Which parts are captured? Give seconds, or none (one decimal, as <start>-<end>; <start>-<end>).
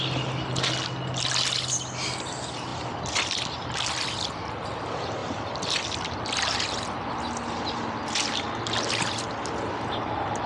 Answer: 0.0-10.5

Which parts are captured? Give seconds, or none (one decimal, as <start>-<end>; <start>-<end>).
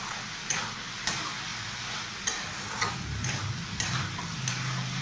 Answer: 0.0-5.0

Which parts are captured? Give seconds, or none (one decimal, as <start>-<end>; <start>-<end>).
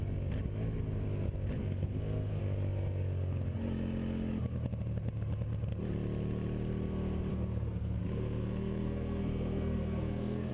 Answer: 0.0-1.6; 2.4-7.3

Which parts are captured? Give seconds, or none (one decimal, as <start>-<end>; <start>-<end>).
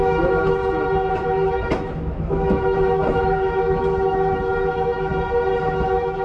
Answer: 0.6-1.1; 5.1-5.6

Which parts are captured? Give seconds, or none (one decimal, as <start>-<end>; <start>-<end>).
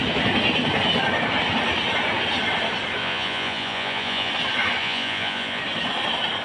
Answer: 0.0-3.0; 4.3-4.8; 5.6-6.4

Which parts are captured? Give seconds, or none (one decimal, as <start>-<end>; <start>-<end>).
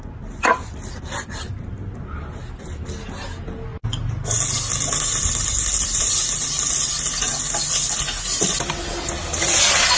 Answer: 0.0-10.0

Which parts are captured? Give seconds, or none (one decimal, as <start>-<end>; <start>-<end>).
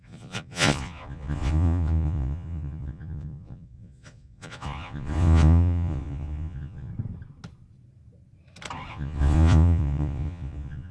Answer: 6.9-8.9